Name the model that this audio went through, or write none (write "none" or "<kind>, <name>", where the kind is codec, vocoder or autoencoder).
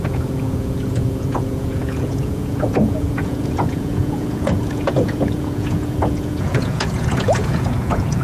vocoder, Vocos